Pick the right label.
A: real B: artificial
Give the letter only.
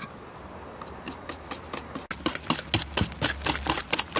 A